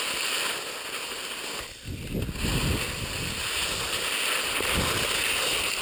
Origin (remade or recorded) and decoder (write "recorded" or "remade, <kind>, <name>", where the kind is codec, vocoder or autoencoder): recorded